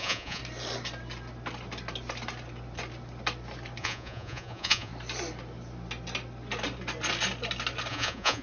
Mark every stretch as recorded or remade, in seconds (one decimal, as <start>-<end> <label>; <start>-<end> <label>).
0.0-0.4 remade; 0.4-3.8 recorded; 3.8-4.9 remade; 4.9-7.9 recorded; 7.9-8.4 remade

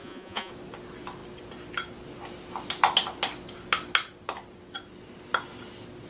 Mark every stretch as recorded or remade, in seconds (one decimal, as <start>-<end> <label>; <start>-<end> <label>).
0.0-0.5 remade; 0.5-6.1 recorded